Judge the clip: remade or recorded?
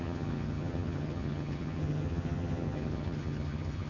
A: remade